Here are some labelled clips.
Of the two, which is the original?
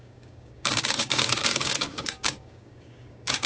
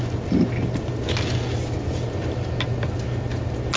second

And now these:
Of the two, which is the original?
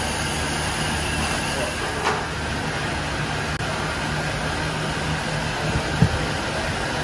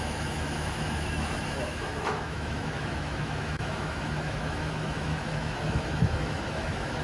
first